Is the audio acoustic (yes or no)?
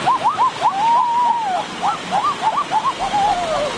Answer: yes